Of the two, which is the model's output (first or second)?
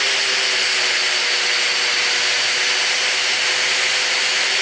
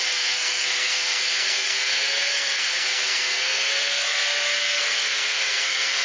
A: second